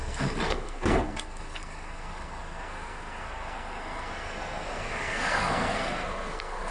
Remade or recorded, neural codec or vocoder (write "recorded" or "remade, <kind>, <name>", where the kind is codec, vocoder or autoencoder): remade, codec, SNAC